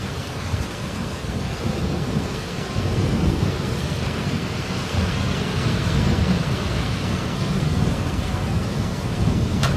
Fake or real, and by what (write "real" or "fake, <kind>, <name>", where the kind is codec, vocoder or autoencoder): fake, codec, SNAC